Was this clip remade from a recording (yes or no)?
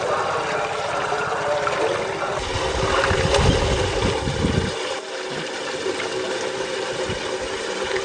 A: no